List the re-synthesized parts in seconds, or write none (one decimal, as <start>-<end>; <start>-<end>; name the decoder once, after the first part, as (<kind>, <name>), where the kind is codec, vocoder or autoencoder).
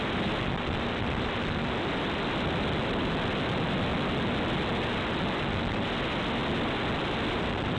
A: 0.0-3.9 (vocoder, BigVGAN v2); 5.7-6.4; 7.0-7.8